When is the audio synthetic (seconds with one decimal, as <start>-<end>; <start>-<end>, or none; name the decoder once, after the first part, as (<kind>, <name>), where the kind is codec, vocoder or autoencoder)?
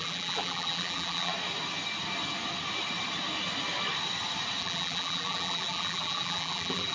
0.0-1.3 (vocoder, BigVGAN v2); 4.6-6.9